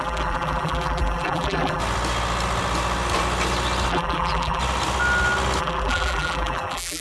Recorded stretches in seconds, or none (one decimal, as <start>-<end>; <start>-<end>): 1.8-3.9; 4.6-5.6